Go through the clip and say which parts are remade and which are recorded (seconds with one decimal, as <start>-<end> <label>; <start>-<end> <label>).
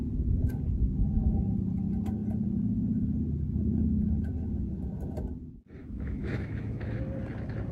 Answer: 0.0-5.8 recorded; 5.8-7.0 remade; 7.0-7.7 recorded